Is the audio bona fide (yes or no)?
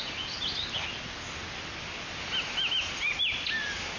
yes